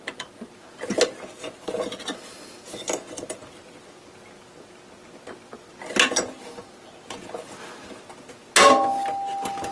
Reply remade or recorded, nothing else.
recorded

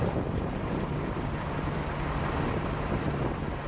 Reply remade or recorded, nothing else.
recorded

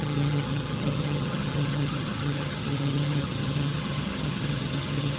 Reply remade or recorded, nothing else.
remade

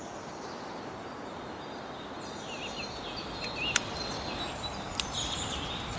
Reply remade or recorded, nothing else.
recorded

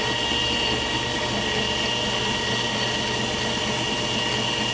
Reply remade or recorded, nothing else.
recorded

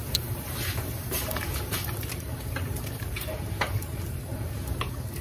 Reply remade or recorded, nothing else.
remade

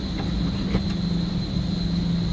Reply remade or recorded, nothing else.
recorded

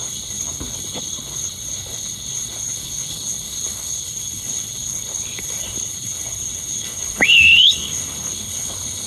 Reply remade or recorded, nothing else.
remade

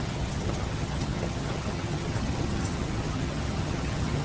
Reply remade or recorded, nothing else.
remade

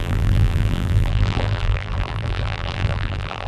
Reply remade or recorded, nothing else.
remade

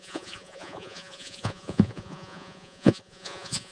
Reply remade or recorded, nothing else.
remade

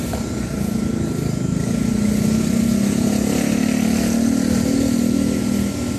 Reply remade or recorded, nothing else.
recorded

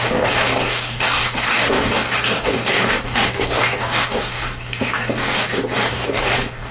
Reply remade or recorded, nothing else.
remade